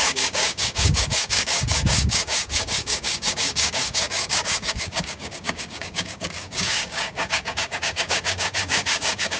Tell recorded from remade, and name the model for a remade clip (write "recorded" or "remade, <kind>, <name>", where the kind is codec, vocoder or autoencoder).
remade, codec, DAC